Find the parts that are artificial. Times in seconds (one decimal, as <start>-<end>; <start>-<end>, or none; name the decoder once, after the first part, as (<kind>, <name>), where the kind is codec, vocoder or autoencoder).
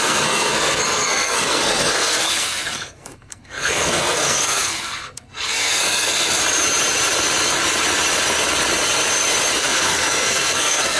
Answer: 0.0-6.4 (codec, SNAC); 9.6-11.0